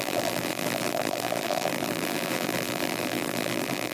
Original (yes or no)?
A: no